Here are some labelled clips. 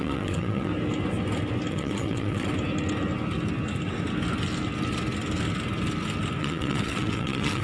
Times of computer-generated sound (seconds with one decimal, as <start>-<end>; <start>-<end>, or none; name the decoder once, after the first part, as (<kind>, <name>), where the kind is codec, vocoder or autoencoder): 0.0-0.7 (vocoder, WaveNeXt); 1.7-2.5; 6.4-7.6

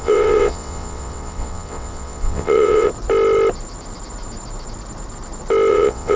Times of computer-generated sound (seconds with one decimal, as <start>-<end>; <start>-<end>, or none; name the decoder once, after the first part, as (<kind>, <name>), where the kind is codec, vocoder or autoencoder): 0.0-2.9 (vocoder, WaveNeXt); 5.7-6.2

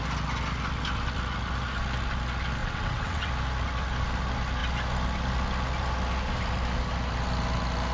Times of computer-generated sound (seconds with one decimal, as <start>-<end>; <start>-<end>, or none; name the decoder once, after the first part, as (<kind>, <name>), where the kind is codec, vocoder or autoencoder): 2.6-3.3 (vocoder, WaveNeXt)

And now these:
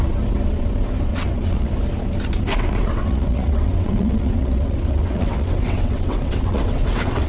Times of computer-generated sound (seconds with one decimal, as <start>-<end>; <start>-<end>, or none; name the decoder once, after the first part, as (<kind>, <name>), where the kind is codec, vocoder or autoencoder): 1.1-1.7 (vocoder, WaveNeXt); 2.5-7.3

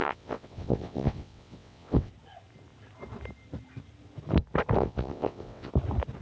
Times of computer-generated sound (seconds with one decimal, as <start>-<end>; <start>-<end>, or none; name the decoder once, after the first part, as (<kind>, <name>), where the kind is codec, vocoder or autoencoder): 0.0-2.1 (vocoder, WaveNeXt); 4.8-5.7

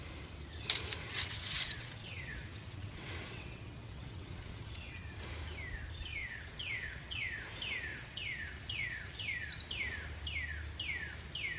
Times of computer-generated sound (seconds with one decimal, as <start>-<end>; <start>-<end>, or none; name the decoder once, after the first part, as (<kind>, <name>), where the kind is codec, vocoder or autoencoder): 1.1-5.0 (vocoder, WaveNeXt); 6.2-7.3; 7.9-9.2

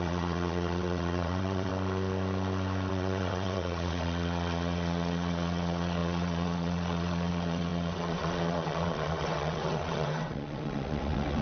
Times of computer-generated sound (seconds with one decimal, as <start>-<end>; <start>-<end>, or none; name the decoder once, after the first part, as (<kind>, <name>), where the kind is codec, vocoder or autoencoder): 0.0-1.7 (vocoder, WaveNeXt); 2.9-11.4

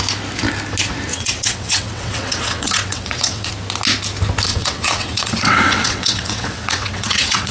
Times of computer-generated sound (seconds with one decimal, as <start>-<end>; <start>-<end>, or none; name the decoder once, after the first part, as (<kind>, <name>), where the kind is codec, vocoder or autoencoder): 1.1-3.5 (vocoder, WaveNeXt); 4.5-7.5